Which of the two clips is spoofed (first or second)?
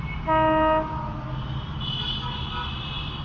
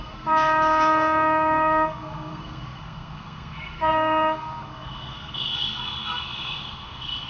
second